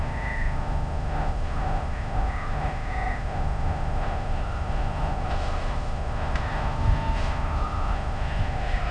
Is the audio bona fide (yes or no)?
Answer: no